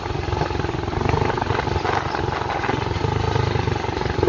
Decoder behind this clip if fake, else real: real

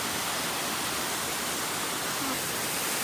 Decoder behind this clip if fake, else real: real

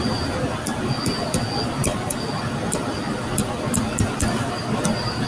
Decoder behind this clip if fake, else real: real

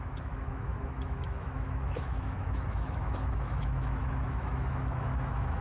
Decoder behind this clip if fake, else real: fake, autoencoder, DAC-VAE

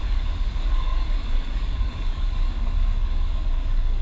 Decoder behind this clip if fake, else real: fake, codec, DAC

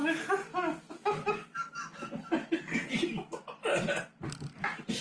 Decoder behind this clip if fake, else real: real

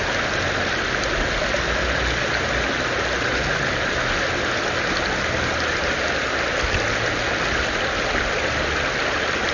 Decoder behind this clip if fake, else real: real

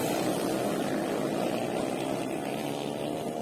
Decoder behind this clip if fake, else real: real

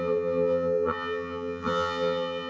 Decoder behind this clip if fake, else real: fake, vocoder, HiFi-GAN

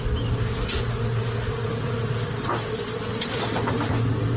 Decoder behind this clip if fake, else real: real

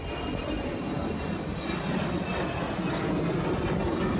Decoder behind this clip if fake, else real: real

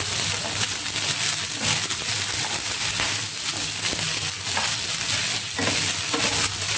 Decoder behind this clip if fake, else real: real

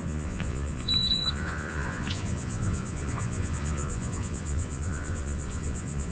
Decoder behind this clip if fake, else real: fake, vocoder, Vocos